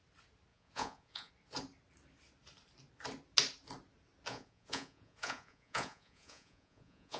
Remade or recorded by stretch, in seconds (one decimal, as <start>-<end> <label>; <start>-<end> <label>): 0.0-0.5 recorded; 0.5-1.3 remade; 1.3-4.3 recorded; 4.3-7.2 remade